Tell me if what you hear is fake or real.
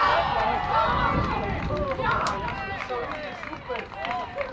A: real